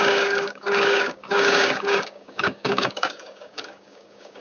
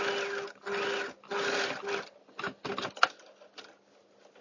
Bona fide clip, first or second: second